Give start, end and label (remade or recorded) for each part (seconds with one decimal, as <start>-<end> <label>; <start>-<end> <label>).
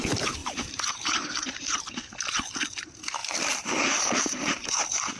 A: 0.0-0.4 recorded; 0.4-1.8 remade; 1.8-3.2 recorded; 3.2-4.4 remade; 4.4-5.2 recorded